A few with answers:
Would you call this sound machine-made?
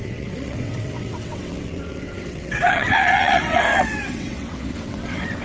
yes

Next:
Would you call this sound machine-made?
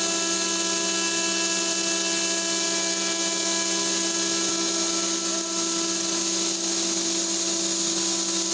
no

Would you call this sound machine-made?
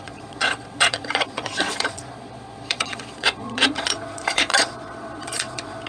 yes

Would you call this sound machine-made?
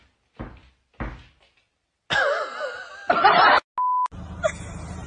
no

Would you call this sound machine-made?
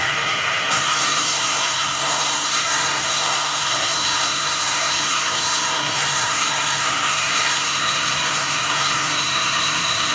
yes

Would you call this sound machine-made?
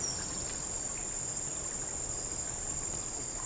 no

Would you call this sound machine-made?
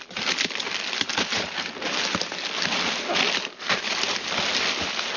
no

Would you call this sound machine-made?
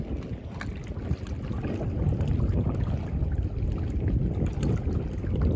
no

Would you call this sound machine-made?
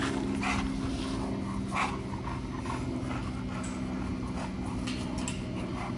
no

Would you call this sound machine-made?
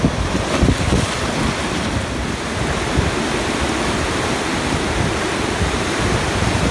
no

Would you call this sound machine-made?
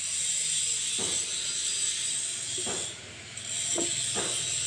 no